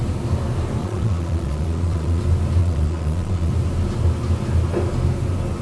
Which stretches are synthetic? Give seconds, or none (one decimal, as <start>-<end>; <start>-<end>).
0.8-2.2; 2.6-3.5